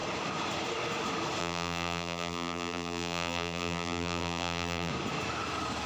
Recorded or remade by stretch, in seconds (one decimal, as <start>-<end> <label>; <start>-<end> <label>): 0.0-1.4 recorded; 1.4-4.9 remade; 4.9-5.9 recorded